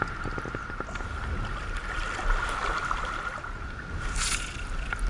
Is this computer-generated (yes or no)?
no